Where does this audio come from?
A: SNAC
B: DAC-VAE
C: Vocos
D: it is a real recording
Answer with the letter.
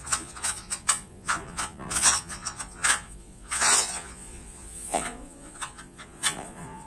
C